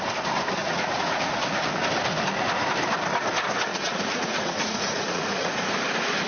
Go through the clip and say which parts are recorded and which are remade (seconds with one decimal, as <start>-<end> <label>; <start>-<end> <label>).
0.0-0.6 recorded; 0.6-1.7 remade; 1.7-3.7 recorded; 3.7-5.7 remade; 5.7-6.3 recorded